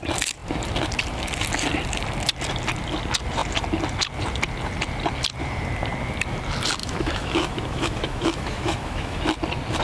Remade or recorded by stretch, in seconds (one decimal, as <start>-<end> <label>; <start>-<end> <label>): 0.0-6.8 recorded; 6.8-9.2 remade; 9.2-9.8 recorded